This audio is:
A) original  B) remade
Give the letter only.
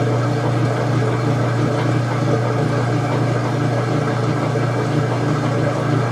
A